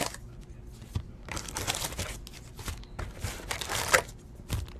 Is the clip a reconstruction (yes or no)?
no